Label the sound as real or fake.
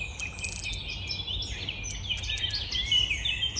real